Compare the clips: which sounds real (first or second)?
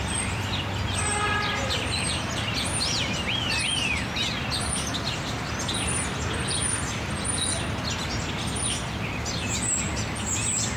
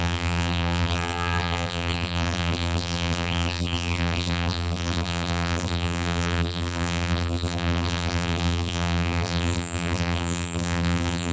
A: first